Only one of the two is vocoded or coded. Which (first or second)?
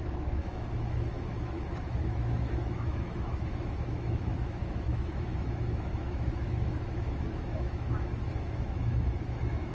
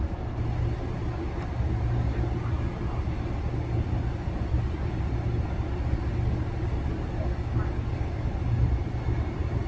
first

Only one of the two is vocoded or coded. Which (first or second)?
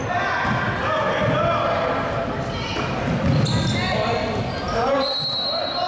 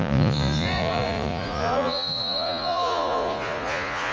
second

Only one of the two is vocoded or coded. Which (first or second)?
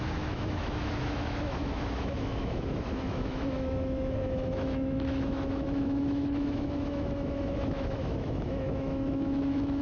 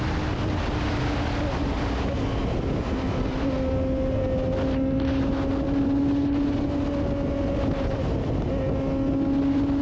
first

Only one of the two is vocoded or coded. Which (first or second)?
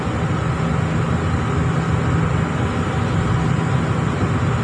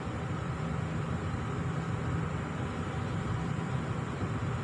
second